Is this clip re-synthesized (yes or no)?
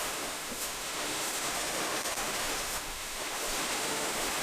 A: yes